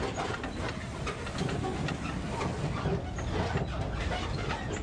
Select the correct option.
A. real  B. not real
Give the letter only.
A